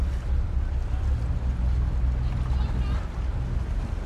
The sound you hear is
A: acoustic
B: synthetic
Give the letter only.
A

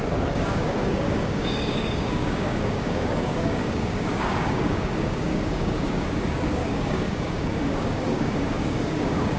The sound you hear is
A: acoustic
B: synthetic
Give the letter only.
B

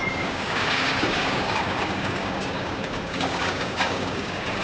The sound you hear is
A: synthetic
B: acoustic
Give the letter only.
A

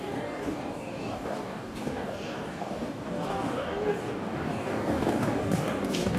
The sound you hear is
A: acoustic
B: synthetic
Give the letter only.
B